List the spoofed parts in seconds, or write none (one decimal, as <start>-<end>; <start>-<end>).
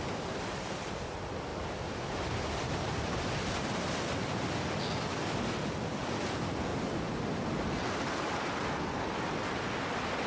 none